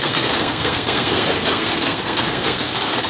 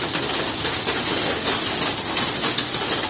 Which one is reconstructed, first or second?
first